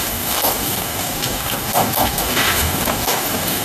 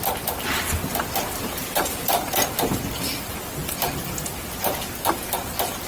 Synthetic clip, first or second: first